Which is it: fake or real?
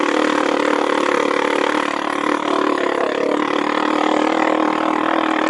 fake